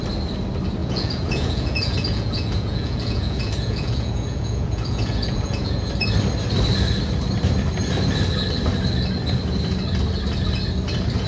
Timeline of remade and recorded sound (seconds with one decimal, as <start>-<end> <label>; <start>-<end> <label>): 0.0-0.8 recorded; 0.8-5.9 remade; 5.9-11.3 recorded